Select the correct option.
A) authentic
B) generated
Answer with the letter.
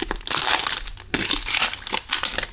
A